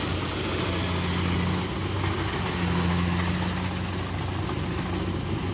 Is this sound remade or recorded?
recorded